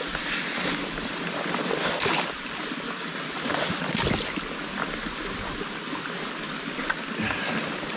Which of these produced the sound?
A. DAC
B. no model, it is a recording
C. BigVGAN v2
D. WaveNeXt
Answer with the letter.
B